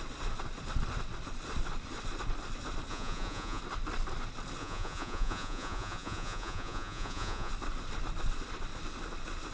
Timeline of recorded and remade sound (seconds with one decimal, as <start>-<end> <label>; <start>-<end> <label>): 0.0-2.9 recorded; 2.9-3.6 remade; 3.6-4.6 recorded; 4.6-7.5 remade; 7.5-9.5 recorded